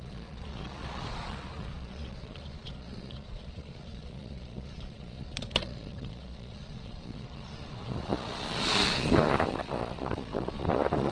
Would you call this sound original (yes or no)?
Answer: no